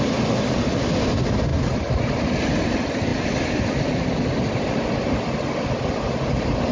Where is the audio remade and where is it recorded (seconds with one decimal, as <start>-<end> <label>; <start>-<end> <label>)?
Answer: 0.0-6.7 recorded